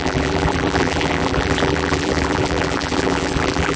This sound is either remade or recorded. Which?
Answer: remade